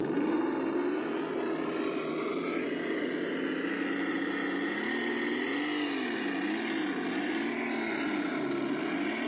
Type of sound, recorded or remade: recorded